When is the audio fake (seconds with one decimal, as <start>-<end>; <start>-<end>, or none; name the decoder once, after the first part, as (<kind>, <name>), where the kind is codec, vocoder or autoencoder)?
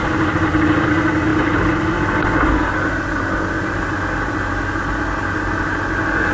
none